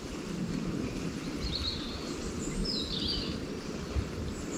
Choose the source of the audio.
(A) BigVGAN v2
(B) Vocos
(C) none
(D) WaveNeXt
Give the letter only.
C